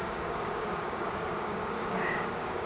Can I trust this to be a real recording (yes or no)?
no